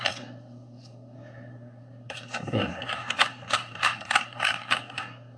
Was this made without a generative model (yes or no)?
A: no